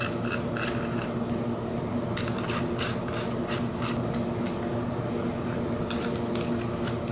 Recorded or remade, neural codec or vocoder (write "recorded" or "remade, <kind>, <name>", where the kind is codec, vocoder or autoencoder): recorded